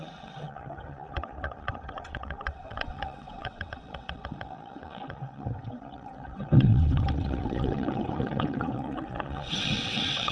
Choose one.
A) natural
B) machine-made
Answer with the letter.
B